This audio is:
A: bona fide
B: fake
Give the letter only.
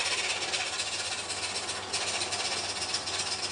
A